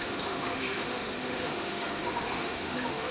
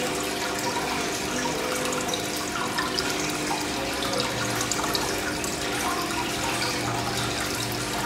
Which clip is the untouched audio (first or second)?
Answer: second